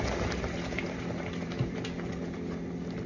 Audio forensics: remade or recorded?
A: recorded